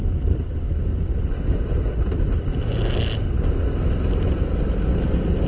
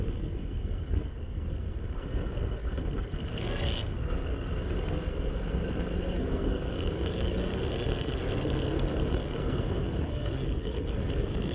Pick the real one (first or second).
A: first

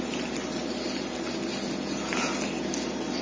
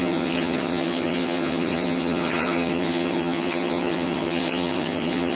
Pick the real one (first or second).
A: first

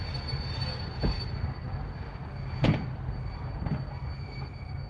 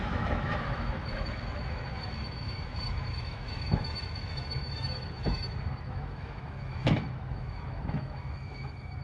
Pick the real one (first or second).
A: first